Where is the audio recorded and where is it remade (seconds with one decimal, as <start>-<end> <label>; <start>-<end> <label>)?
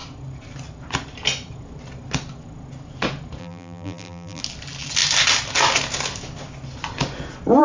0.0-3.4 recorded; 3.4-4.4 remade; 4.4-7.6 recorded